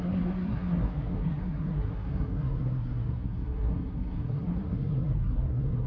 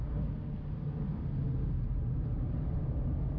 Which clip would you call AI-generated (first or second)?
first